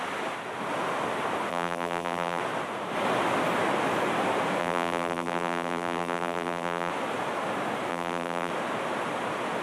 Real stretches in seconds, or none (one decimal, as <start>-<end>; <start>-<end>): 0.0-1.5; 2.4-4.6; 6.9-7.9; 8.5-9.6